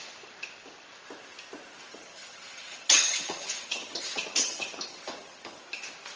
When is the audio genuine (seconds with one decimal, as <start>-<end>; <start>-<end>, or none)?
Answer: 0.0-1.9; 5.6-6.2